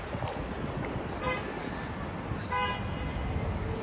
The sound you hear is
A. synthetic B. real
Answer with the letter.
B